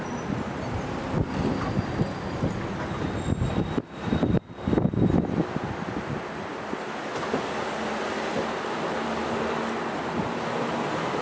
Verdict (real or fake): real